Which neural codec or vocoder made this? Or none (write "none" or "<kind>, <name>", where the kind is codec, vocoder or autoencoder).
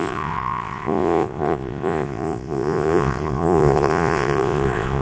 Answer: vocoder, Vocos